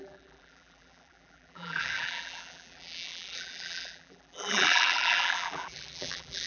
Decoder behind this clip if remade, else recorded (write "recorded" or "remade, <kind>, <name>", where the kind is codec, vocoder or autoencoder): remade, vocoder, BigVGAN v2